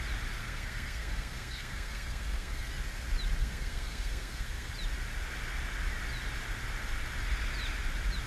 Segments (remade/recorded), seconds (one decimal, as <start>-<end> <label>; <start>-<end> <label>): 0.0-0.4 recorded; 0.4-2.7 remade; 2.7-3.4 recorded; 3.4-4.7 remade; 4.7-8.3 recorded